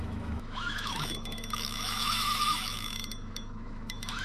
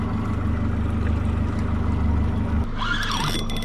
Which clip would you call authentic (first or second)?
second